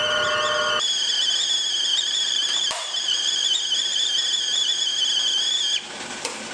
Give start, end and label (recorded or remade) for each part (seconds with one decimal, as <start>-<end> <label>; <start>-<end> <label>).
0.0-1.9 recorded; 1.9-3.5 remade; 3.5-6.5 recorded